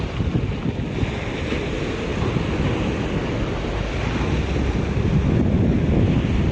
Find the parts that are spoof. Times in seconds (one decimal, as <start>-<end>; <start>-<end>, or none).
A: none